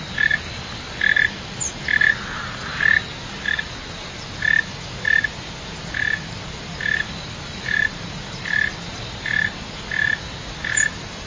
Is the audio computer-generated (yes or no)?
no